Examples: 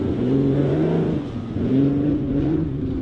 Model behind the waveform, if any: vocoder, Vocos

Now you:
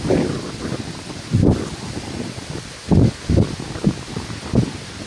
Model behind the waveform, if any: none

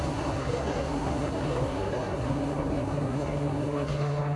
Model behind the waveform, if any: codec, SNAC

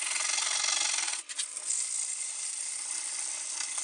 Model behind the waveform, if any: none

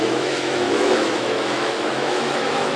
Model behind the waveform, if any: autoencoder, DAC-VAE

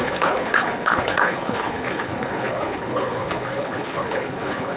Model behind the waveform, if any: codec, HILCodec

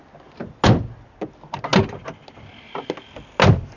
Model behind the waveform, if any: none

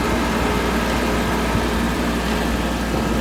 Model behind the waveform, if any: none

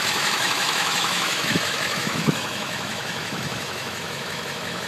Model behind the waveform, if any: autoencoder, DAC-VAE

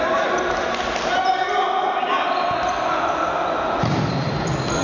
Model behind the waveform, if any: none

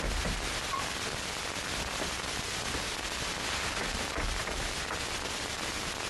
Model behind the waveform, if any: vocoder, BigVGAN v2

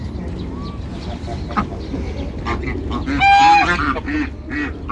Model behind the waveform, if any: none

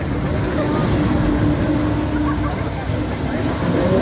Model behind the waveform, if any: none